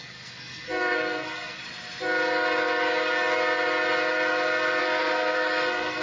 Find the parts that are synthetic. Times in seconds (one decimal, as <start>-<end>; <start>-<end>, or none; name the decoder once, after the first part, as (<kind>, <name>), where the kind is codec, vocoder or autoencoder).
0.0-1.6 (codec, SNAC); 4.8-6.0